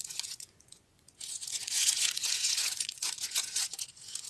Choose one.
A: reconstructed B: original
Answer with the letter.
A